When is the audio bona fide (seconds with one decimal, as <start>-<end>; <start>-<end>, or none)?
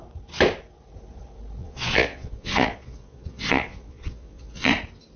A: 0.0-1.6; 4.7-5.2